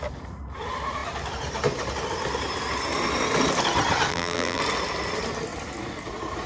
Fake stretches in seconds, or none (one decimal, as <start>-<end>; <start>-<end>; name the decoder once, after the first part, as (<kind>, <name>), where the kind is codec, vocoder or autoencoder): 4.1-4.6 (vocoder, BigVGAN v2)